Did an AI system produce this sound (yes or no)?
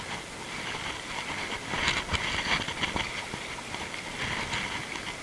no